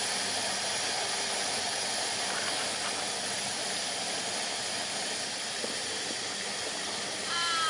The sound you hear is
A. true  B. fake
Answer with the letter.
A